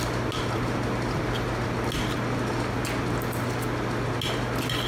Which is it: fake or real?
real